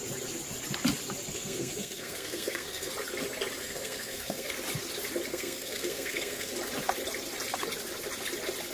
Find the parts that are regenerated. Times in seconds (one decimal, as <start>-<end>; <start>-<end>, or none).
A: 1.3-2.9; 3.6-4.5; 5.3-6.5